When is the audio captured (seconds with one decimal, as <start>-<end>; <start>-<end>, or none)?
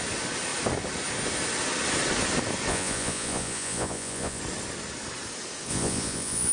0.0-2.7; 4.4-5.7